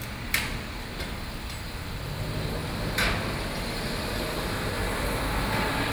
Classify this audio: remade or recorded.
recorded